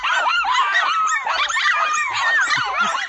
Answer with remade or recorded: recorded